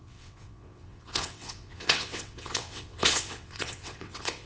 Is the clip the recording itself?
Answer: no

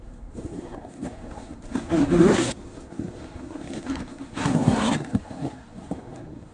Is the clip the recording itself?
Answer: no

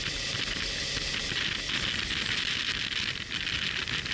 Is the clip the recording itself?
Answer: yes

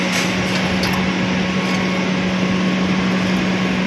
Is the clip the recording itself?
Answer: yes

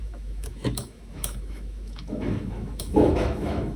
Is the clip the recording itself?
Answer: no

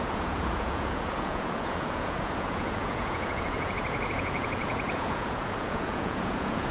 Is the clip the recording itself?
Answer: no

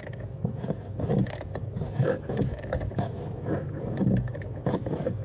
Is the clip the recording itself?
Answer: no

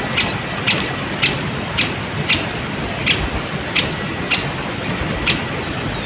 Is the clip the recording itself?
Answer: yes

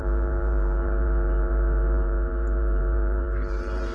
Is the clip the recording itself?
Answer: no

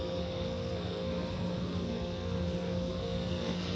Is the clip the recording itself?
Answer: no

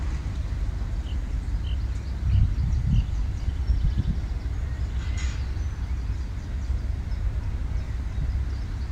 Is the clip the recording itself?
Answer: yes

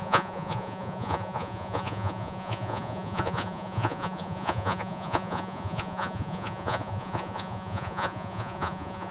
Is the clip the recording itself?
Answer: no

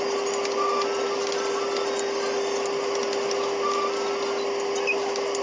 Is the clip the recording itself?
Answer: yes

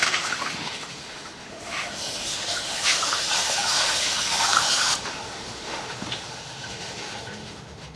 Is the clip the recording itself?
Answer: no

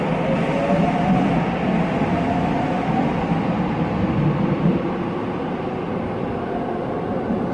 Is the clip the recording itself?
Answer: yes